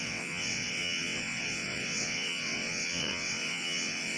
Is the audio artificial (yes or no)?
yes